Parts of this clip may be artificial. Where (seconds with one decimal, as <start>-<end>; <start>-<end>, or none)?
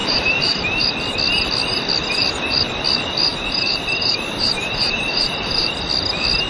0.0-0.6; 3.3-5.7